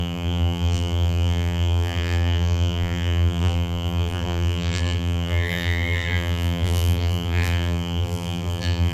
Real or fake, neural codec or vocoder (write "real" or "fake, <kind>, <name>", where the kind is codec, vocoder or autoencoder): fake, vocoder, BigVGAN v2